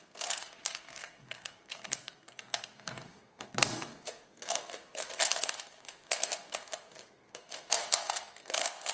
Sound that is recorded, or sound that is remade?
remade